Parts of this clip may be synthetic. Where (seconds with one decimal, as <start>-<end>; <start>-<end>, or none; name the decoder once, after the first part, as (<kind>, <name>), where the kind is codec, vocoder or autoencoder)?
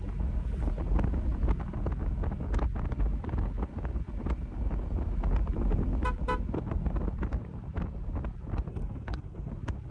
8.7-9.5 (codec, SNAC)